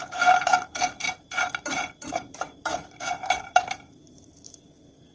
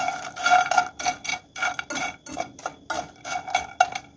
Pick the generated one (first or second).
first